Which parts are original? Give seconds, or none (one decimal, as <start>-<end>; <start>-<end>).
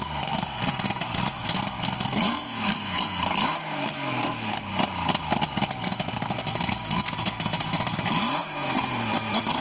4.7-5.7